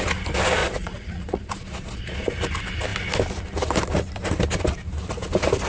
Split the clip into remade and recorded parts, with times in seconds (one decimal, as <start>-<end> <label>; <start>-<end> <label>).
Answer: 0.0-0.6 recorded; 0.6-2.4 remade; 2.4-5.7 recorded